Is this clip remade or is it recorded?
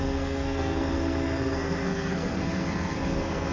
remade